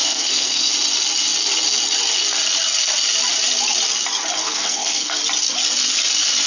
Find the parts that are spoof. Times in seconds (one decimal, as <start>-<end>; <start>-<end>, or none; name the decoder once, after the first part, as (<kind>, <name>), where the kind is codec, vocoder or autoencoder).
0.0-0.7 (codec, SNAC); 4.4-5.2